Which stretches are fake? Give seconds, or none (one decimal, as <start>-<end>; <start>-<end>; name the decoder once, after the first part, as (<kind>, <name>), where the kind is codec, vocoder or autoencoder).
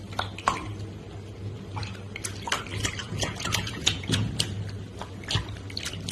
3.0-4.3 (vocoder, Vocos)